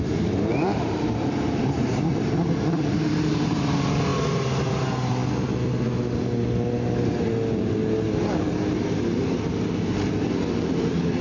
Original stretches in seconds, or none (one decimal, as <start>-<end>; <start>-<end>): 5.2-10.5